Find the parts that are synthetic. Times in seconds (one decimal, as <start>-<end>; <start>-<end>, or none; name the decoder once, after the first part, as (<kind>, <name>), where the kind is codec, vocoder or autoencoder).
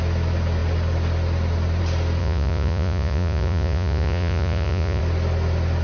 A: 2.2-5.0 (vocoder, Vocos)